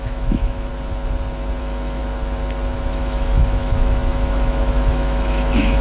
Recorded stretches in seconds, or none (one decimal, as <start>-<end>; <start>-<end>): 0.7-1.6; 2.0-2.9